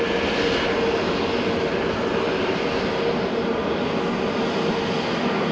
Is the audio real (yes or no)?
yes